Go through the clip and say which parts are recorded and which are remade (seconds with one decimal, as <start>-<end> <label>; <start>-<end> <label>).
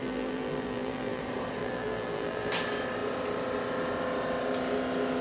0.0-1.2 remade; 1.2-1.6 recorded; 1.6-2.5 remade; 2.5-5.2 recorded